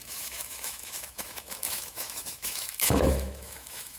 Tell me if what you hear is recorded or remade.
remade